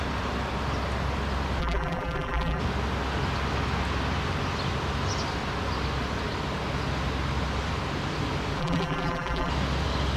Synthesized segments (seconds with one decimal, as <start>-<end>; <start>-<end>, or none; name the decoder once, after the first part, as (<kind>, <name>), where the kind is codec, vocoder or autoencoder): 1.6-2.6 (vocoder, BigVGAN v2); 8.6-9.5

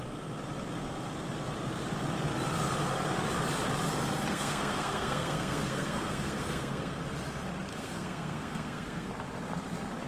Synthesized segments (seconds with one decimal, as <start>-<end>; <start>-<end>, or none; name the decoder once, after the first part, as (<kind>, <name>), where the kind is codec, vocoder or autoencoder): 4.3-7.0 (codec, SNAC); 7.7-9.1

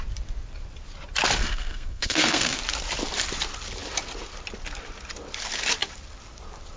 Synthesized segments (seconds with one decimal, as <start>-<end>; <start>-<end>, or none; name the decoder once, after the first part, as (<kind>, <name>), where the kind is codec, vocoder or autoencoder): 1.4-2.6 (codec, SNAC)

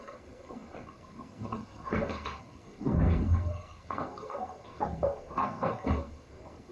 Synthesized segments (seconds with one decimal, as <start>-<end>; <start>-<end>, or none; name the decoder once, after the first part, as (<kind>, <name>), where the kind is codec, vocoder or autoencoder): 0.0-6.7 (codec, SNAC)

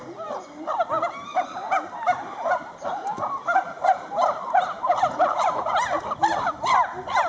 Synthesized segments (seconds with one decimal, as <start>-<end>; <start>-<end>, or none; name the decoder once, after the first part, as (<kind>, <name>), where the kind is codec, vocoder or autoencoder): none

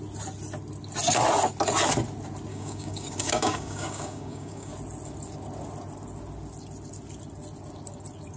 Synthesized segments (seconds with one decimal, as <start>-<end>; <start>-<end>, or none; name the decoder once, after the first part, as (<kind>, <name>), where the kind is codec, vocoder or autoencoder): 2.5-4.7 (codec, DAC)